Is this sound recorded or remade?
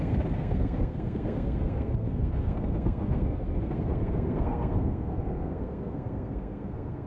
remade